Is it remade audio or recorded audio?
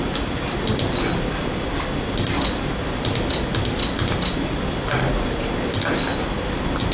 recorded